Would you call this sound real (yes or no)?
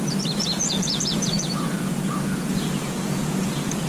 no